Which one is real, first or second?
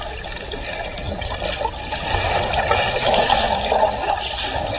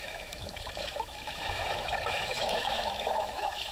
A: first